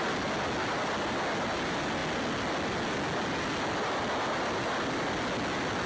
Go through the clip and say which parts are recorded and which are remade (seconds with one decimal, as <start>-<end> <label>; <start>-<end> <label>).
0.0-5.9 recorded